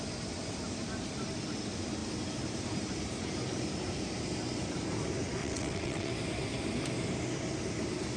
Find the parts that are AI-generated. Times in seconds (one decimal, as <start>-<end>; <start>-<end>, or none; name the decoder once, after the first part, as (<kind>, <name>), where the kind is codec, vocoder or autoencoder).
5.4-6.1 (vocoder, WaveNeXt)